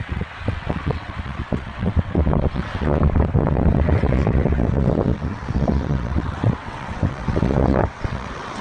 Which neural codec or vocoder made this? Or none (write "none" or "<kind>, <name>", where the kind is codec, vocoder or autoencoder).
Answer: vocoder, WaveNeXt